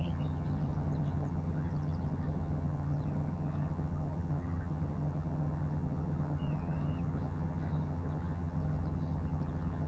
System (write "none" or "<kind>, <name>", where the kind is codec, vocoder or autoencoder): vocoder, HiFi-GAN